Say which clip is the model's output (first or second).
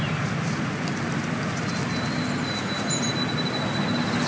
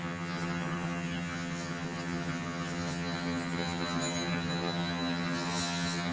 second